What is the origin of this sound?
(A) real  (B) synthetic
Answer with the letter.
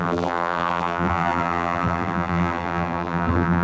B